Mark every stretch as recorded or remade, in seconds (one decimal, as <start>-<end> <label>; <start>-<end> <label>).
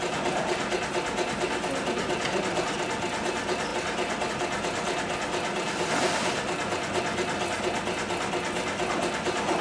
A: 0.0-9.6 recorded